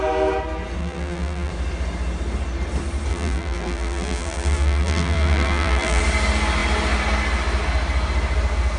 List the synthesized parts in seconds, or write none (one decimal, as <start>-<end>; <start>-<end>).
0.8-1.5; 3.1-6.0